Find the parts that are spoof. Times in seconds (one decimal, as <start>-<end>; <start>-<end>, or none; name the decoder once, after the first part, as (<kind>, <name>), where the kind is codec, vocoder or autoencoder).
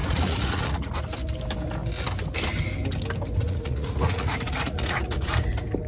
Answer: 0.0-0.9 (vocoder, Vocos); 3.3-5.5